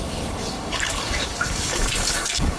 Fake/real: fake